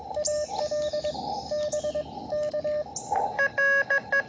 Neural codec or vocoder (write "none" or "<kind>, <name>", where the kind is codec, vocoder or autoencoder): none